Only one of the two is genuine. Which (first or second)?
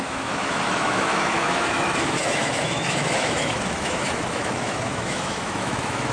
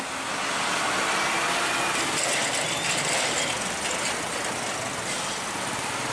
second